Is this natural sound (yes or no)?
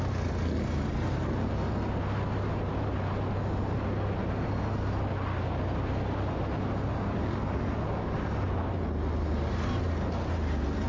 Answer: yes